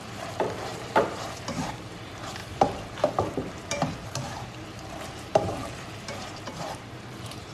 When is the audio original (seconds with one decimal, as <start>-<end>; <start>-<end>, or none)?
2.4-3.3